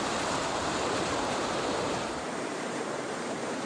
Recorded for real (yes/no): no